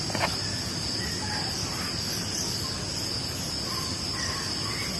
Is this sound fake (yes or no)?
no